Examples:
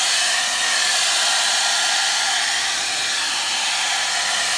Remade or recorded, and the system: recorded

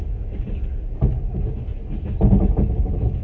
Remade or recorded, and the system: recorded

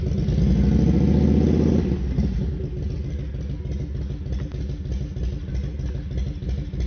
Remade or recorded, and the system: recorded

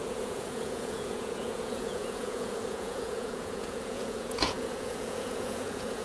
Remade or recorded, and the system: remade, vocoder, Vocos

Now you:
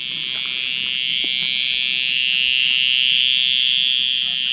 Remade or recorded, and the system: recorded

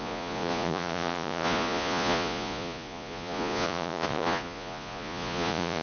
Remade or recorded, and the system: remade, vocoder, Vocos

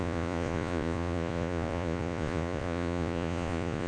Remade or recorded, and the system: remade, vocoder, Vocos